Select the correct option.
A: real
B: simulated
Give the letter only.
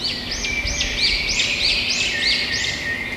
A